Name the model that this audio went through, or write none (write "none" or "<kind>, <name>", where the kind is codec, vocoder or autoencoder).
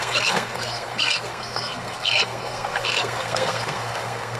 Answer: codec, SNAC